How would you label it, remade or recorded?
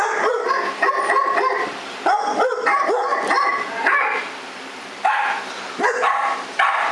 remade